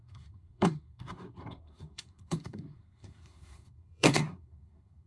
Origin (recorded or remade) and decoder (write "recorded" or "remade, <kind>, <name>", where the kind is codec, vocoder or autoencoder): remade, codec, SNAC